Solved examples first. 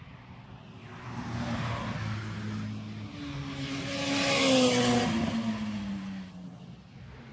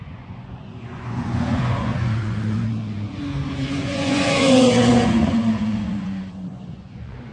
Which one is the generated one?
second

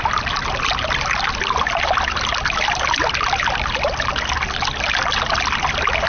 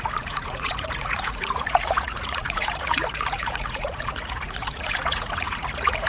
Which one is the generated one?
second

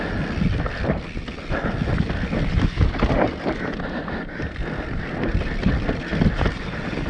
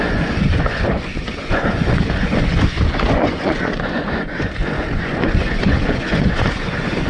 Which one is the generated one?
second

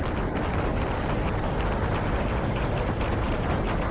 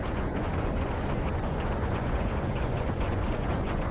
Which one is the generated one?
second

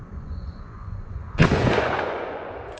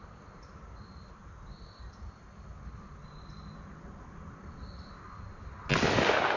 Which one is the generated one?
first